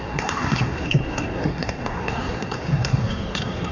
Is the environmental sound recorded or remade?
remade